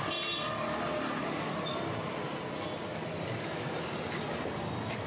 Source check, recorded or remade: recorded